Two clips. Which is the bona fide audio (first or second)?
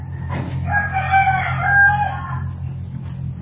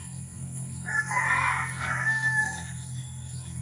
first